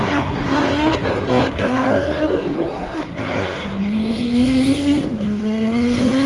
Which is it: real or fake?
fake